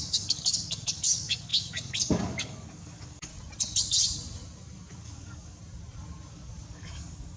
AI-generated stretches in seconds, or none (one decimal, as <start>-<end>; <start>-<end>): 0.0-3.3; 5.0-5.6; 6.3-7.4

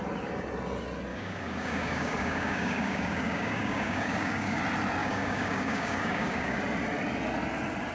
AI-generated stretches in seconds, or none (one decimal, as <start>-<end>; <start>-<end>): 1.1-4.6; 5.0-6.6

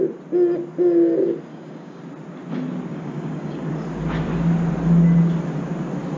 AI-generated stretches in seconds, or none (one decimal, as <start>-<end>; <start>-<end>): 1.5-2.0; 2.9-3.7

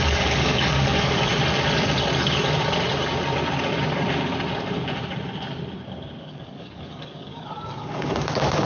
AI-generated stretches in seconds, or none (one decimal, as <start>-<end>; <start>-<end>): 0.0-1.3; 6.2-8.6

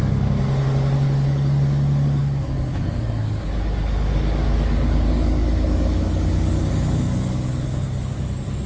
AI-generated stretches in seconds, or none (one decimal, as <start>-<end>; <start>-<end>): 0.0-8.7